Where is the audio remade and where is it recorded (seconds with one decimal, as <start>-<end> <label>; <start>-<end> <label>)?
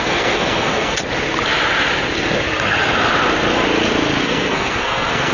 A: 0.0-1.0 remade; 1.0-4.2 recorded; 4.2-5.3 remade